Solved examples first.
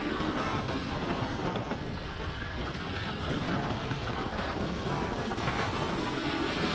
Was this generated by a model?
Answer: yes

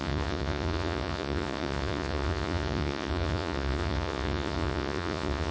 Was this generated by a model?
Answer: yes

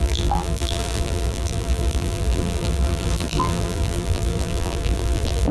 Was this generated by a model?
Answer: yes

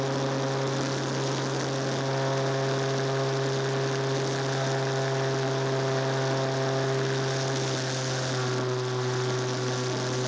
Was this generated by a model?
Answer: no